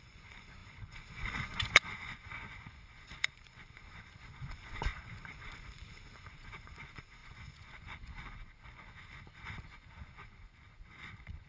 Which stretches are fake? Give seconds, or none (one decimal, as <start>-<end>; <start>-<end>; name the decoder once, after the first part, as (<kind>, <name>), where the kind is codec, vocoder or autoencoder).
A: 0.0-11.5 (vocoder, Vocos)